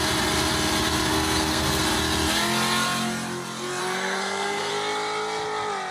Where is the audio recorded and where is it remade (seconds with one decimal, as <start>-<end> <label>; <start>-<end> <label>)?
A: 0.0-1.1 recorded; 1.1-1.8 remade; 1.8-3.8 recorded; 3.8-4.7 remade; 4.7-5.9 recorded